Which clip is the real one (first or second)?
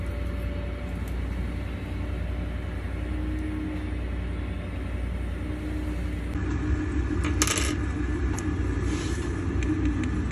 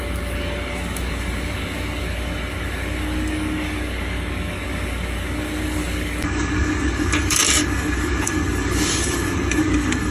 first